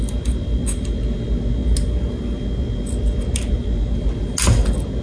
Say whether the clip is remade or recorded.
recorded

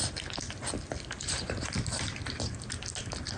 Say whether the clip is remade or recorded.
recorded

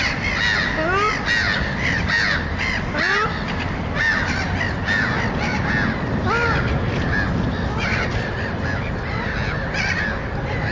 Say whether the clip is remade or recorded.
recorded